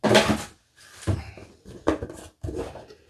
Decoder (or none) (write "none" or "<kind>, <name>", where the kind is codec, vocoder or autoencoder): none